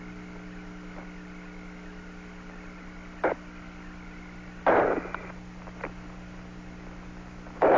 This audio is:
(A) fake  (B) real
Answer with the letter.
B